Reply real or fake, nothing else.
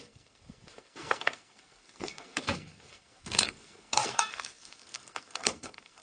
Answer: fake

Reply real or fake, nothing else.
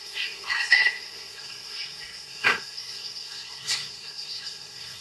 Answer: fake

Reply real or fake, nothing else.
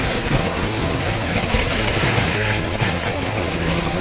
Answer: fake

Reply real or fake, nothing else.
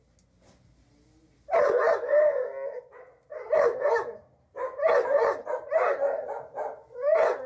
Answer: real